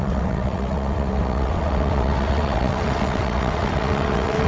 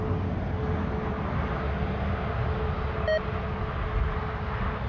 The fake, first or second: first